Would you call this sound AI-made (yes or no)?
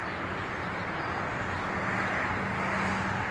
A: no